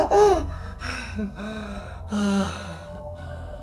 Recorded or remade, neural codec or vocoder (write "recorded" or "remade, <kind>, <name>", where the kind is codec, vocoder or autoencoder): remade, codec, SNAC